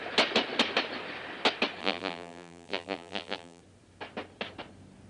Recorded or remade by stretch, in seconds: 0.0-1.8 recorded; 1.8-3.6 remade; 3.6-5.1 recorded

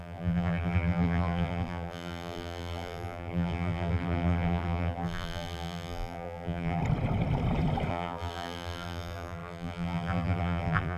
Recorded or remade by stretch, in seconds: 0.0-6.8 remade; 6.8-7.9 recorded; 7.9-11.0 remade

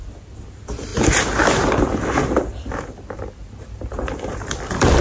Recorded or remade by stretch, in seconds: 0.0-0.9 remade; 0.9-2.4 recorded; 2.4-5.0 remade

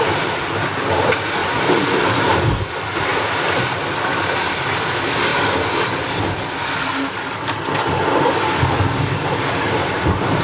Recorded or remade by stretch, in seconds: 0.0-3.1 recorded; 3.1-3.8 remade; 3.8-5.3 recorded; 5.3-7.3 remade; 7.3-10.4 recorded

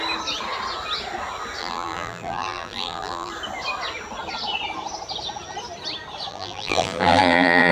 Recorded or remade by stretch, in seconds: 0.0-1.6 recorded; 1.6-3.3 remade; 3.3-6.3 recorded; 6.3-7.7 remade

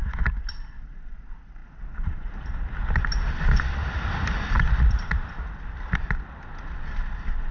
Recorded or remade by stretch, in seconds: 0.0-1.6 recorded; 1.6-5.3 remade; 5.3-7.5 recorded

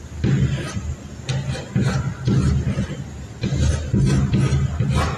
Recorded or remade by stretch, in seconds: 0.0-5.2 recorded

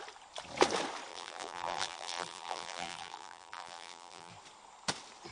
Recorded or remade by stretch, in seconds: 0.0-1.1 recorded; 1.1-4.3 remade; 4.3-5.3 recorded